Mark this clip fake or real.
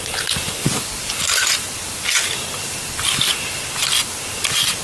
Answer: real